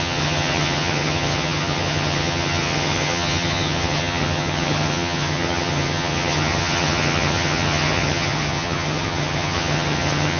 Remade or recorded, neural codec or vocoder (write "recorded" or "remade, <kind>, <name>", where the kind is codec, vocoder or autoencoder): remade, vocoder, HiFi-GAN